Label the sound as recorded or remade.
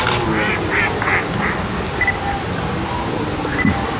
recorded